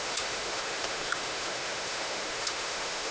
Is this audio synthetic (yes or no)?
yes